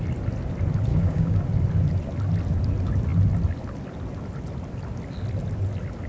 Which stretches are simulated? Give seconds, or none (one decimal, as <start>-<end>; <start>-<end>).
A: 0.9-1.4